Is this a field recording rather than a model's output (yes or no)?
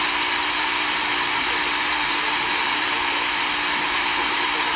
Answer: no